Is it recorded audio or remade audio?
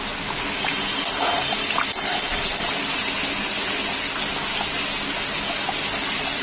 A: recorded